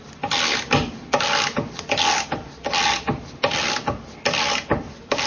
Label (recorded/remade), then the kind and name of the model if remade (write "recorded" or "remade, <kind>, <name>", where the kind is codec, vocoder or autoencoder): recorded